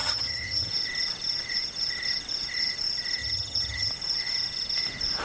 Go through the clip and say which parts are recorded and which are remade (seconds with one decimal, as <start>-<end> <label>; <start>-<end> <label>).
0.0-0.7 remade; 0.7-3.2 recorded; 3.2-3.9 remade; 3.9-5.2 recorded